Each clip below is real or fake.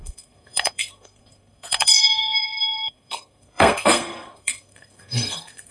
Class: fake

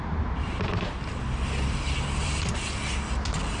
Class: real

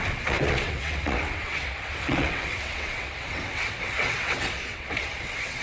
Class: fake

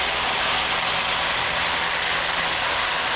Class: real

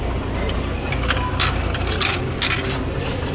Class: real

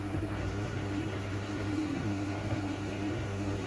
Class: fake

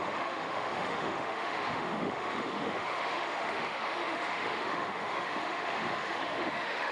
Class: fake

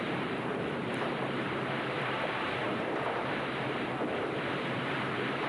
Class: fake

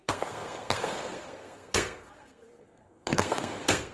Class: fake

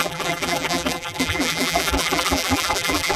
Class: fake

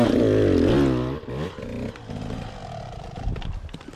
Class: real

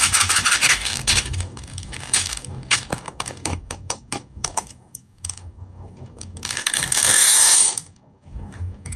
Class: fake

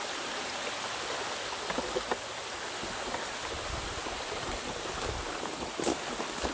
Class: real